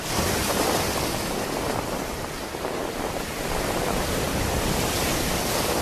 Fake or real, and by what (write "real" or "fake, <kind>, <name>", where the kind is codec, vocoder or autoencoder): real